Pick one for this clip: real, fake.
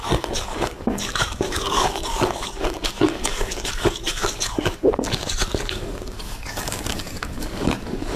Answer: fake